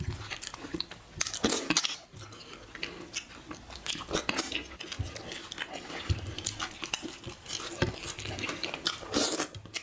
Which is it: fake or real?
real